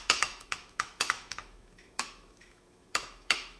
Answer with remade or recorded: remade